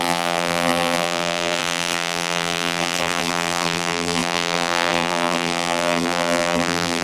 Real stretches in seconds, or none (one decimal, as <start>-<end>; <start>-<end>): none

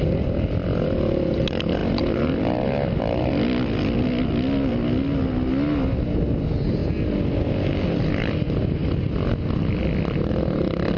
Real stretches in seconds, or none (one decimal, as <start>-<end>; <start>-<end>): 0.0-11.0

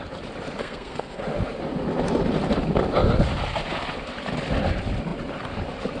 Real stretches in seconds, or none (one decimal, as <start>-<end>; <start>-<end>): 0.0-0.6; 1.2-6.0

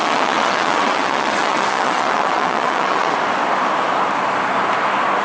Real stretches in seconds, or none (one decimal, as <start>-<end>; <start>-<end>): 3.1-5.2